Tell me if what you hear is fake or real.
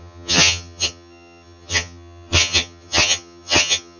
fake